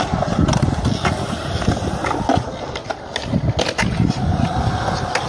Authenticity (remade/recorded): recorded